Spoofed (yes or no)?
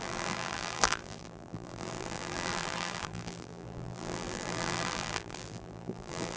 yes